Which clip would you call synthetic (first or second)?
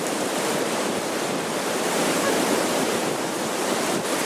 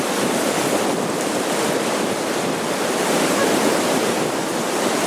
first